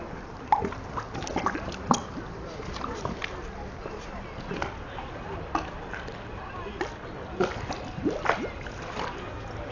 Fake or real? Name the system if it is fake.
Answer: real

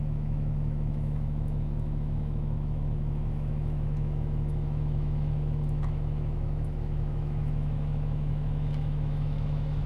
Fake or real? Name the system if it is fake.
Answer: fake, autoencoder, DAC-VAE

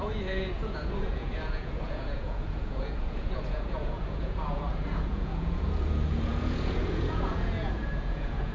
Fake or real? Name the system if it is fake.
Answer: fake, vocoder, Vocos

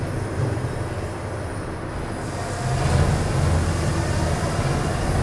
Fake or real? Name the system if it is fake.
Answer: real